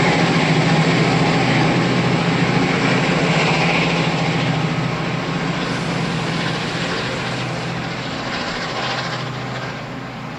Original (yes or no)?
yes